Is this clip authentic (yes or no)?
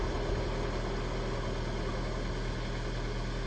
yes